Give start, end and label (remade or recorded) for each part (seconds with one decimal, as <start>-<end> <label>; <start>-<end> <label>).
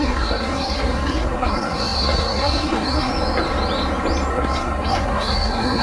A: 0.0-3.1 remade; 3.1-4.3 recorded; 4.3-5.8 remade